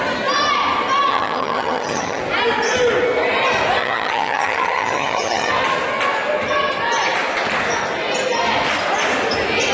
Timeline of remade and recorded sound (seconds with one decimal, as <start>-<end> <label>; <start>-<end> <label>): 0.0-1.1 recorded; 1.1-2.2 remade; 2.2-3.8 recorded; 3.8-5.5 remade; 5.5-9.7 recorded